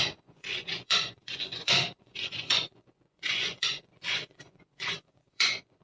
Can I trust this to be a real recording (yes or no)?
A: no